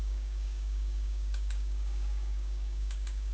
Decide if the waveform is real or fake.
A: fake